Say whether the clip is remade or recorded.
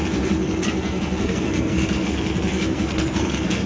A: remade